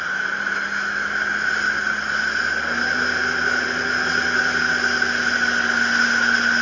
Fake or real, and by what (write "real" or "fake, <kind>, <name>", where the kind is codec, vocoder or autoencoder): real